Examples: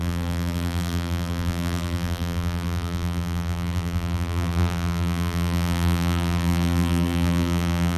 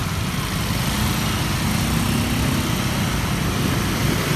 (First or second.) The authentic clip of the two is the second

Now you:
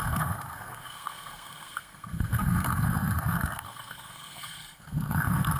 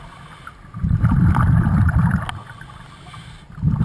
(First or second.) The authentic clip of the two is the second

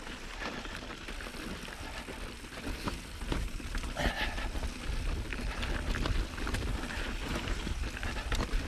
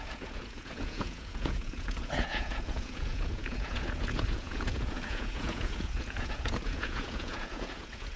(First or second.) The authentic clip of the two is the first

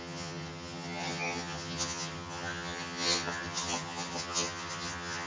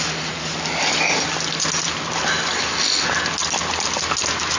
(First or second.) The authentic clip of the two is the second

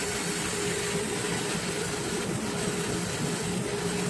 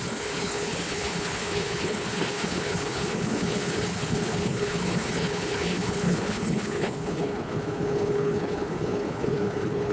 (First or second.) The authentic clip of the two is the first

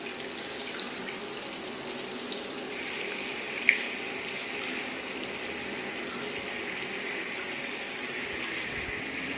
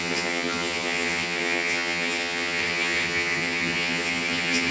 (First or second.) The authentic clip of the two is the first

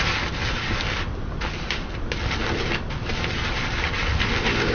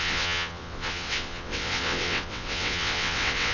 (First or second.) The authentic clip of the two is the first